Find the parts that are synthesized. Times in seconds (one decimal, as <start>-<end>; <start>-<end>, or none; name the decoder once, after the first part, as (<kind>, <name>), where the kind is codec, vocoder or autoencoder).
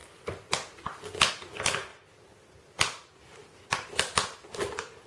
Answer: 1.3-5.1 (vocoder, BigVGAN v2)